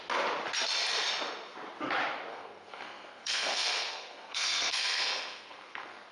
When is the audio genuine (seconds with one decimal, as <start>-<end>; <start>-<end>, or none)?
0.0-2.3